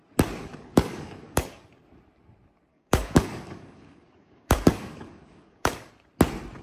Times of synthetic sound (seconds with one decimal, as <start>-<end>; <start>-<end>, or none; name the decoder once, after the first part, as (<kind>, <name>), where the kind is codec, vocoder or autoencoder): 0.4-1.7 (codec, DAC); 2.7-5.9